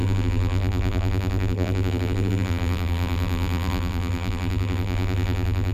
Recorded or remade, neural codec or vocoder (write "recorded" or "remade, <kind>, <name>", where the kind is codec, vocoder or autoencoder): remade, vocoder, BigVGAN v2